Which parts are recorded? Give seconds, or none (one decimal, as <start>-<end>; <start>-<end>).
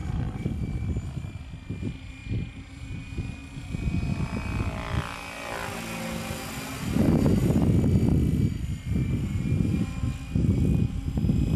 1.4-2.2; 3.0-11.6